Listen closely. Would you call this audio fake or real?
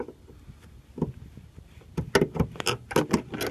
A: real